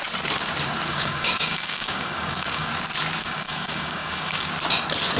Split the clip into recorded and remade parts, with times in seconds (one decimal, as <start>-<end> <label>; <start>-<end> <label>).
0.0-0.9 recorded; 0.9-2.7 remade; 2.7-3.2 recorded; 3.2-4.5 remade; 4.5-5.2 recorded